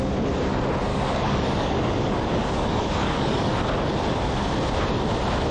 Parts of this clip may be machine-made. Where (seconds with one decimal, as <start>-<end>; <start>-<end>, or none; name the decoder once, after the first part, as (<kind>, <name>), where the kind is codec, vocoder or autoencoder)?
0.9-3.5 (codec, DAC)